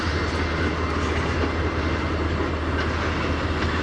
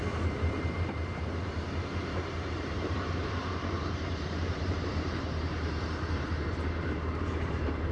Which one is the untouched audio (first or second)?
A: first